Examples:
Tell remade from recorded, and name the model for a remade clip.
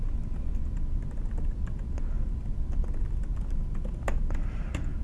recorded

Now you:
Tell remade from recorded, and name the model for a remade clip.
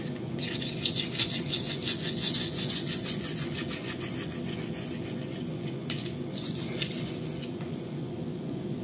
remade, vocoder, Vocos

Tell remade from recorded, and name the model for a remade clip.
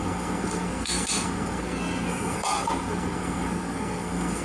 remade, codec, SNAC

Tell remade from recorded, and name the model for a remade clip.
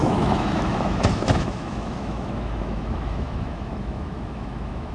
remade, autoencoder, DAC-VAE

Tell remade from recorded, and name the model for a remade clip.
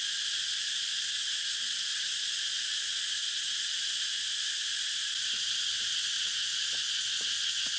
recorded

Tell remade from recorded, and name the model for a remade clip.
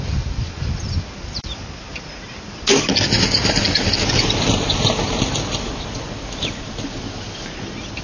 recorded